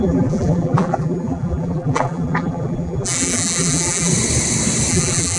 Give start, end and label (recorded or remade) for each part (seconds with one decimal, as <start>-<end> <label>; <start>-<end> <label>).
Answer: 0.0-4.1 remade; 4.1-4.9 recorded; 4.9-5.4 remade